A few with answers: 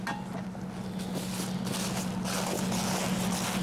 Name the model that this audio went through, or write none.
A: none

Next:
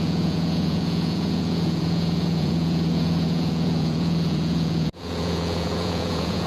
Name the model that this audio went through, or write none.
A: vocoder, Vocos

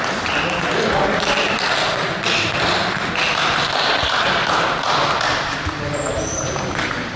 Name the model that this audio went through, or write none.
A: none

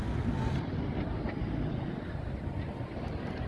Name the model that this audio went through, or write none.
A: none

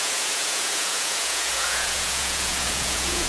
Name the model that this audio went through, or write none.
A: vocoder, Vocos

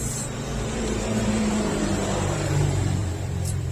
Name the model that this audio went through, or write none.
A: vocoder, BigVGAN v2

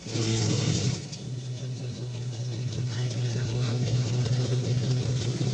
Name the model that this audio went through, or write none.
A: codec, SNAC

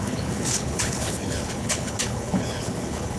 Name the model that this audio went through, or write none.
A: codec, HILCodec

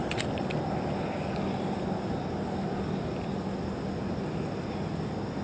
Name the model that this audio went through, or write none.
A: none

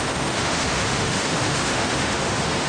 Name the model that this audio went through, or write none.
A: autoencoder, DAC-VAE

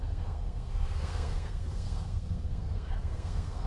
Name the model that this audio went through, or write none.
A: codec, SNAC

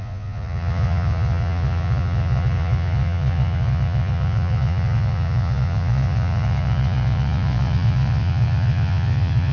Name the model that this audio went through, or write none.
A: vocoder, Vocos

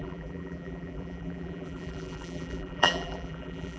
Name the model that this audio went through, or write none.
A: vocoder, BigVGAN v2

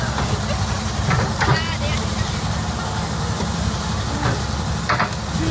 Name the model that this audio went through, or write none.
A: none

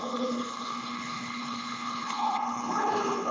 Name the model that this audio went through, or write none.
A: codec, HILCodec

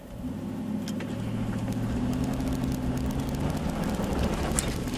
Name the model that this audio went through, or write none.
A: none